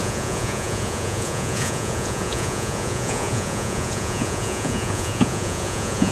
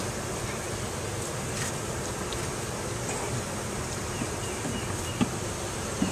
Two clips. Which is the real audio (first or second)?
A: second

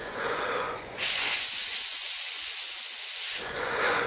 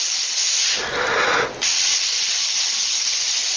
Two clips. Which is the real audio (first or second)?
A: second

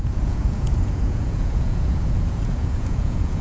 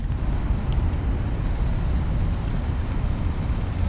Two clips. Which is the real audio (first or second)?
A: second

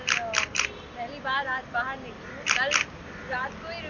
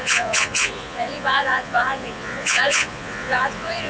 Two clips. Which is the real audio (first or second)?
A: first